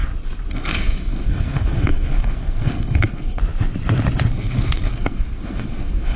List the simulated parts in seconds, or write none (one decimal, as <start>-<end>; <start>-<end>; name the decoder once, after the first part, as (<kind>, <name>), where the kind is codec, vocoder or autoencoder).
0.5-3.4 (codec, SNAC); 4.3-6.2